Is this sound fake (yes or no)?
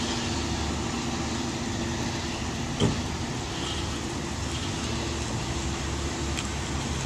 no